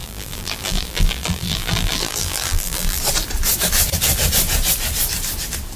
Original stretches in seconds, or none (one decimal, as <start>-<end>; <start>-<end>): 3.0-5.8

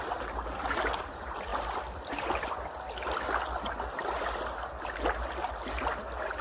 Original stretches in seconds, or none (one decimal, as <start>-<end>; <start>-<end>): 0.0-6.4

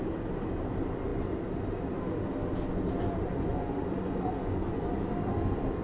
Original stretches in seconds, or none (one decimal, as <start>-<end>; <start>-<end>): 0.0-3.5; 4.8-5.8